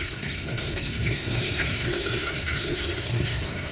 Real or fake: fake